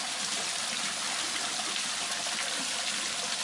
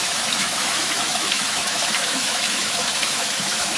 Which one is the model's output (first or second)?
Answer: second